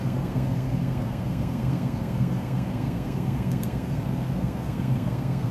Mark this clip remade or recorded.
remade